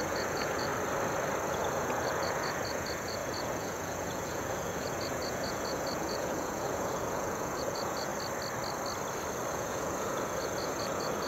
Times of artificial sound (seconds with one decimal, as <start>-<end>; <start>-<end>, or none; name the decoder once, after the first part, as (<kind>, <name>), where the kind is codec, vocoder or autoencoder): 0.0-0.7 (vocoder, Vocos); 1.5-8.1; 9.5-11.3